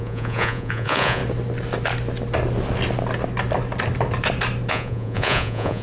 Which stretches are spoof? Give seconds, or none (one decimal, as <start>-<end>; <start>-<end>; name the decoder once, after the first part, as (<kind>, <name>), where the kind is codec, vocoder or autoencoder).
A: 0.0-1.2 (vocoder, Vocos); 4.7-5.8